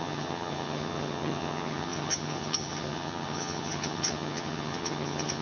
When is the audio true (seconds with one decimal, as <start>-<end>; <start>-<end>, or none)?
none